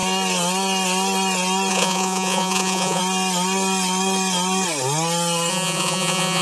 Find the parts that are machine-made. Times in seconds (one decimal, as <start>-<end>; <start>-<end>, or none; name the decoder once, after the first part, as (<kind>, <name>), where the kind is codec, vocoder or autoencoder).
1.7-3.0 (vocoder, Vocos); 5.5-6.4